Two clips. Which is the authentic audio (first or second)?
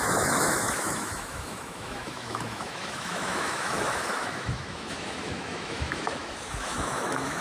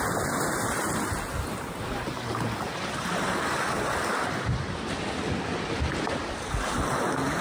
second